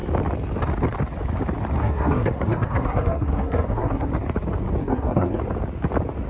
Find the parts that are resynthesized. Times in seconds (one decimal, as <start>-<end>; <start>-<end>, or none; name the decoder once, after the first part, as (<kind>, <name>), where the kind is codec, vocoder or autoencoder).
1.8-4.1 (codec, SNAC); 4.8-5.4